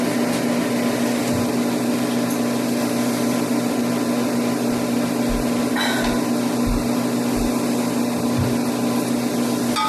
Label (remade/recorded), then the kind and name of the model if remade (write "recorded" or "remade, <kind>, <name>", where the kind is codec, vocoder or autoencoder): recorded